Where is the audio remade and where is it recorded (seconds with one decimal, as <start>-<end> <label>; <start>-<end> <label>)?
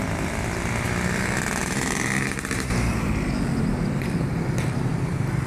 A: 0.0-1.6 recorded; 1.6-3.1 remade; 3.1-5.5 recorded